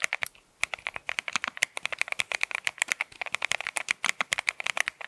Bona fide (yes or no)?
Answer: yes